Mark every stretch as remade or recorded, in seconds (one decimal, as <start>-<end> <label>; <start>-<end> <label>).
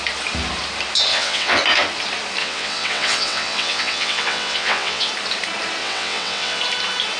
0.0-1.1 recorded; 1.1-1.6 remade; 1.6-2.4 recorded; 2.4-5.1 remade; 5.1-5.8 recorded; 5.8-6.6 remade; 6.6-7.2 recorded